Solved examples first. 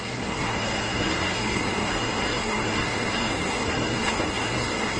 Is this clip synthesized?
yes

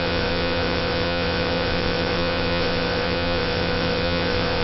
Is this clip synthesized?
yes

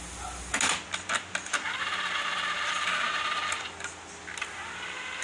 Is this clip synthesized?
no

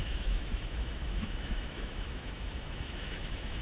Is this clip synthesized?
yes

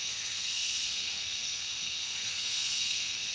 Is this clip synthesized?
yes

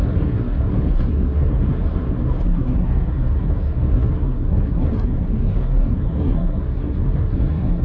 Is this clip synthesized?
yes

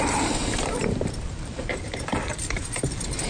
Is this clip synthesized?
yes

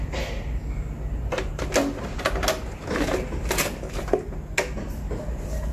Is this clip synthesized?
no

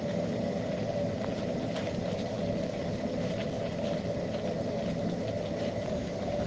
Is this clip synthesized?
no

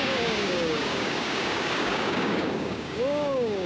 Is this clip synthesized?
yes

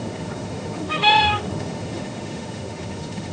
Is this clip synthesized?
yes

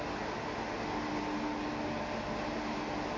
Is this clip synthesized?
no